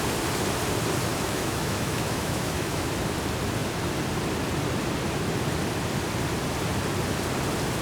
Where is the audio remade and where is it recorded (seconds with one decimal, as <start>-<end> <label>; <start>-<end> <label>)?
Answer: 0.0-1.1 recorded; 1.1-2.9 remade; 2.9-7.8 recorded